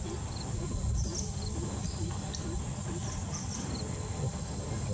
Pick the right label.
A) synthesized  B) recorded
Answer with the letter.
B